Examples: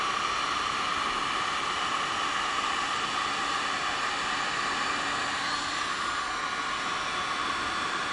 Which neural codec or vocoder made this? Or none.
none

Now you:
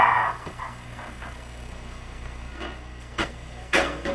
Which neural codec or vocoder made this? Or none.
codec, SNAC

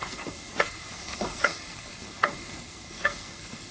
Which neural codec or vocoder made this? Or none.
codec, SNAC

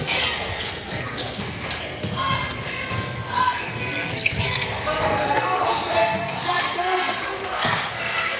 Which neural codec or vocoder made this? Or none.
codec, SNAC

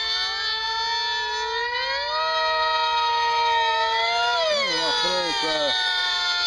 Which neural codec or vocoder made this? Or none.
none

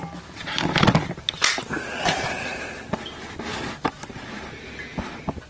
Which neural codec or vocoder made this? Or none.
none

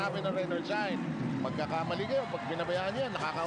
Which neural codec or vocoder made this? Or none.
none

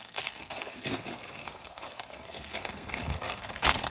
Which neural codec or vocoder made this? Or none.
codec, SNAC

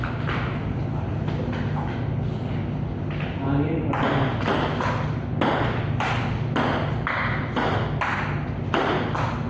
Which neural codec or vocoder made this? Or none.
none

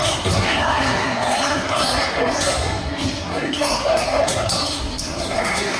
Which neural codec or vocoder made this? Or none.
codec, SNAC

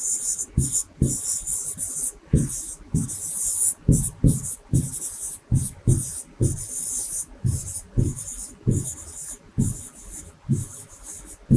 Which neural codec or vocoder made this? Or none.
none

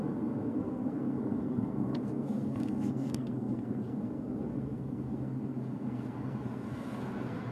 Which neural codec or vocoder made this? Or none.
codec, SNAC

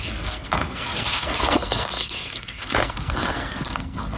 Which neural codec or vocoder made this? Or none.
codec, SNAC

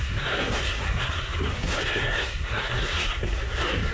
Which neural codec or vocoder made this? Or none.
codec, SNAC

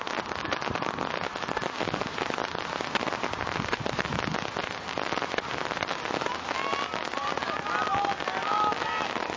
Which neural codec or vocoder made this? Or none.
none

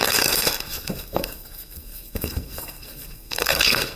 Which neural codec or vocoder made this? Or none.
codec, SNAC